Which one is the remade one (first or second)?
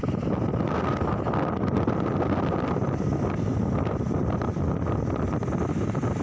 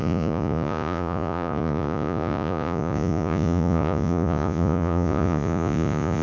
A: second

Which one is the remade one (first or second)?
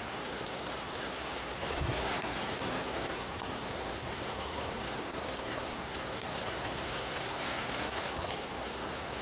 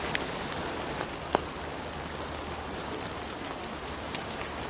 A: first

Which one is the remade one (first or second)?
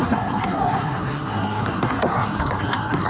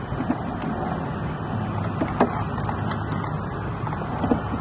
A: first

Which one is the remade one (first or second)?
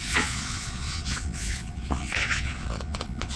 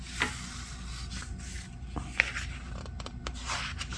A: first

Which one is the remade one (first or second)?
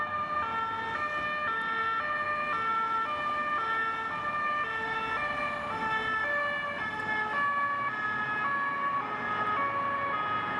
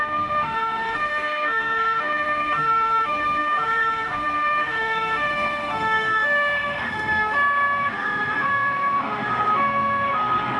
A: second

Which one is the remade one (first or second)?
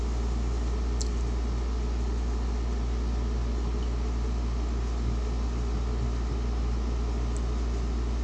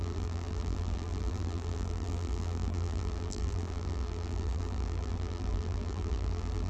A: second